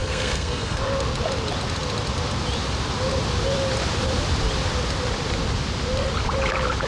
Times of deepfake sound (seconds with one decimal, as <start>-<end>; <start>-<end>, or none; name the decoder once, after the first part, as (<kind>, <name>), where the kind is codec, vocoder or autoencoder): 0.0-0.8 (codec, SNAC)